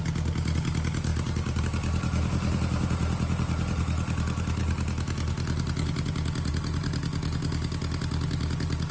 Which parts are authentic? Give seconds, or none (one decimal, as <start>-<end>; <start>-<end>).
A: 0.0-8.9